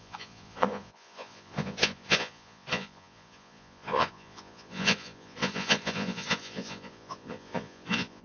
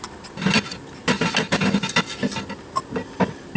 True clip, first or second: second